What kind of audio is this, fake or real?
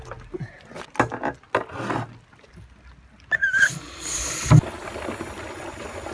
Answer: real